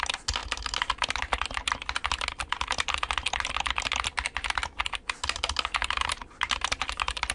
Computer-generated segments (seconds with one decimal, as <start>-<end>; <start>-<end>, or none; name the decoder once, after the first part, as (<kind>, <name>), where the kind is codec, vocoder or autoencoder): none